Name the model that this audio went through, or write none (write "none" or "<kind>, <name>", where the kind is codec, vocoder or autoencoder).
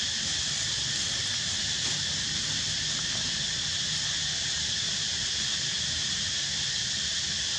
none